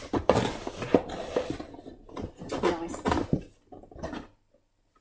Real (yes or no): yes